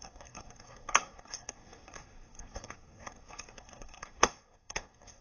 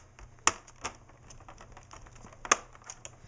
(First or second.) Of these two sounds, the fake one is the first